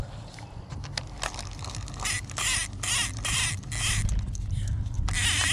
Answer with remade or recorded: recorded